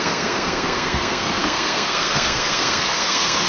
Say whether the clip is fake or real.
fake